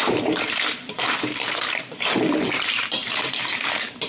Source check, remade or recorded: remade